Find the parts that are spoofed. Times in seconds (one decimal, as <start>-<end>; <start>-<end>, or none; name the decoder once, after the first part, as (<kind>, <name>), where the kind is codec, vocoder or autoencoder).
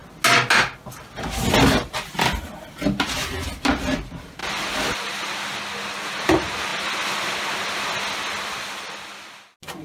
none